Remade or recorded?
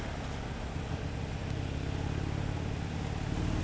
recorded